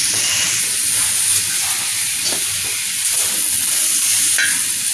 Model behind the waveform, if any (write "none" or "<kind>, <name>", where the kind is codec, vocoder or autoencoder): none